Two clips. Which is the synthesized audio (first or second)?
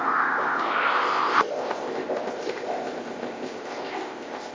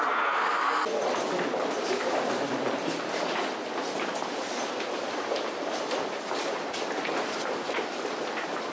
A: first